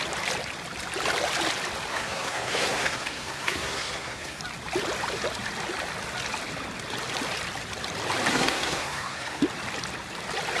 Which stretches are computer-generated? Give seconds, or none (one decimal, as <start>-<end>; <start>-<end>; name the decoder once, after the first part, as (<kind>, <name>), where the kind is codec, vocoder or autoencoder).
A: 1.9-4.4 (codec, SNAC); 8.3-9.4